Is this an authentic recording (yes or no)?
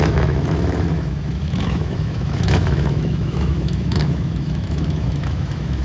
no